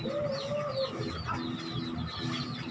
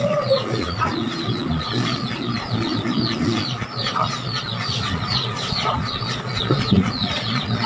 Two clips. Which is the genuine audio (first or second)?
first